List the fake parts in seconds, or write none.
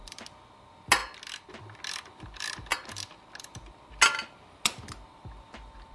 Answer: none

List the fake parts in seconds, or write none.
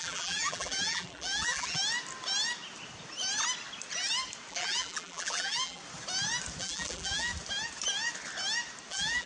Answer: 0.0-1.8 (vocoder, BigVGAN v2); 4.5-5.8; 6.6-7.3; 8.9-9.3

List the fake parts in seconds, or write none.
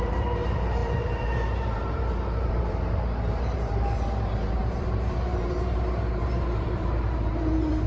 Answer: 0.0-7.9 (vocoder, BigVGAN v2)